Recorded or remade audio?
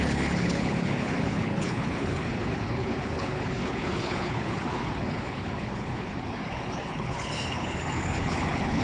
remade